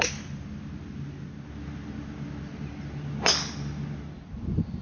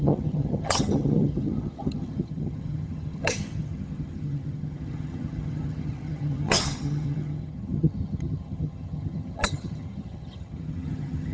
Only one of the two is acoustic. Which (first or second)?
first